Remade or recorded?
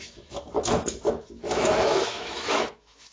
remade